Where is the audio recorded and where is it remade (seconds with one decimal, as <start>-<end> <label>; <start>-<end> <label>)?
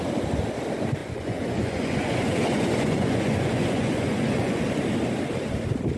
0.0-1.0 recorded; 1.0-4.6 remade; 4.6-6.0 recorded